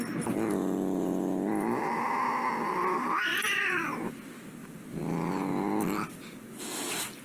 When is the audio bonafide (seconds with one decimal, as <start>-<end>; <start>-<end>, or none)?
0.0-3.3; 4.1-7.2